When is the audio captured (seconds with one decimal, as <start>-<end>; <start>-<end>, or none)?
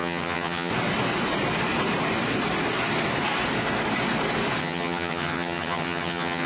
0.7-4.6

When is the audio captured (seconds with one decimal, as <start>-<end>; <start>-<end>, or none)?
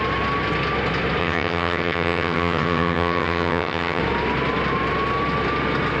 0.0-1.2; 4.0-6.0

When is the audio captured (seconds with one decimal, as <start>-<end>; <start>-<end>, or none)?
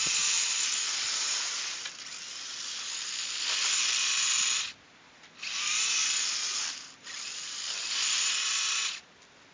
0.0-9.5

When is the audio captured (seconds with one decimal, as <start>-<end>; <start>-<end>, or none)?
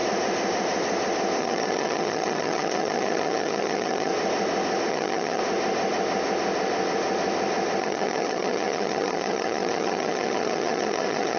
0.0-1.4; 4.1-4.9; 5.4-7.8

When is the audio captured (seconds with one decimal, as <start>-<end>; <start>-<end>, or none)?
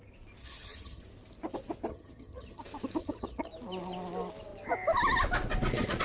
0.0-0.4; 1.0-1.9; 2.6-3.0; 3.5-6.0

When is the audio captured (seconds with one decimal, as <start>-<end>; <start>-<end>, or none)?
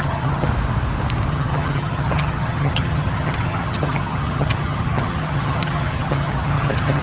0.5-1.3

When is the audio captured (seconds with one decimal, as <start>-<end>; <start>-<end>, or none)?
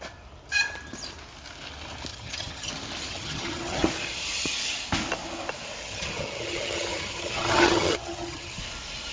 0.0-2.1; 2.7-3.1; 3.9-5.8; 8.6-9.1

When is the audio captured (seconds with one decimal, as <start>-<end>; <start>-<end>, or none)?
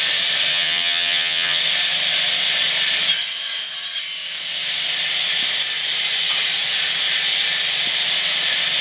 0.0-0.5; 1.6-8.8